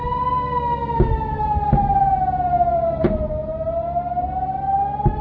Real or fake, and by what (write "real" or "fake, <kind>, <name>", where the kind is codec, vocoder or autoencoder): real